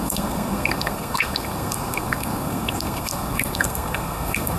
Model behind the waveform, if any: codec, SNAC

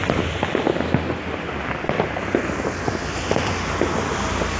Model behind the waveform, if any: none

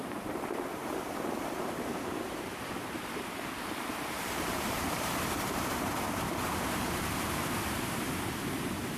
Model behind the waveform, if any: vocoder, BigVGAN v2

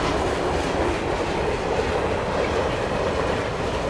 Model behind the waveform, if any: none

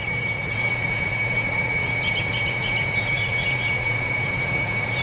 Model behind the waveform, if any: vocoder, Vocos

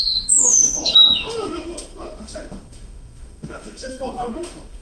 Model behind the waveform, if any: autoencoder, DAC-VAE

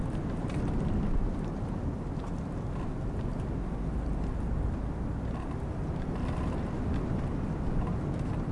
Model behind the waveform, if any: none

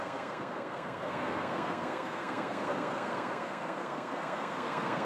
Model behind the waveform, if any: codec, SNAC